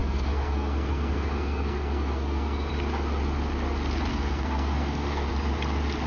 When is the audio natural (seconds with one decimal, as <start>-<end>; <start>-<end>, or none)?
2.7-4.1; 5.3-6.1